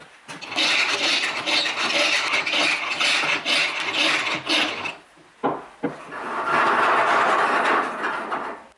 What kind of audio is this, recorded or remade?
recorded